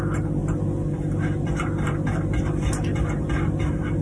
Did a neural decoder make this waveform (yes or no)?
no